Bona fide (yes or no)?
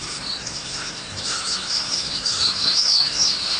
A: no